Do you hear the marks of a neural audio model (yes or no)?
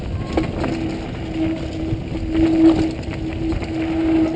no